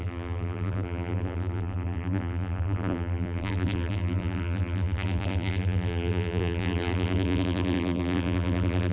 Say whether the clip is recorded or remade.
remade